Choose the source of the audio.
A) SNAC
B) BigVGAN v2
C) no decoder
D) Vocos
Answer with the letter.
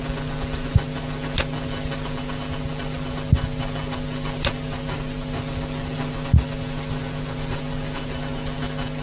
C